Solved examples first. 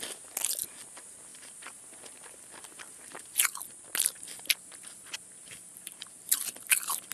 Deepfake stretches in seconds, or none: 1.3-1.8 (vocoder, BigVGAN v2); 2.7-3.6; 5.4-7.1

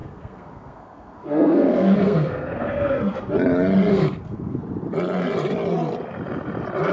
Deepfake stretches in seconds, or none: 0.0-3.3 (codec, SNAC); 3.9-4.6

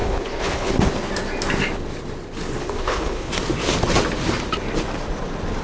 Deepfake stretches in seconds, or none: 0.0-0.7 (codec, HILCodec); 2.6-3.3

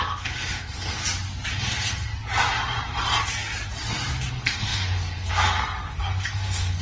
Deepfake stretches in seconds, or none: 0.0-1.0 (codec, SNAC); 1.6-2.1; 4.3-6.8

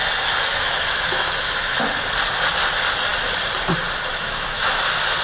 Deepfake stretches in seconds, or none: 0.5-1.8 (autoencoder, DAC-VAE); 4.1-4.7